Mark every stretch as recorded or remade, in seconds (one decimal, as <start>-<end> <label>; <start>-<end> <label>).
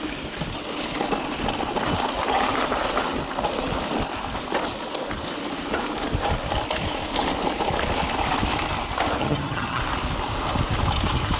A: 0.0-9.2 recorded; 9.2-9.8 remade; 9.8-11.4 recorded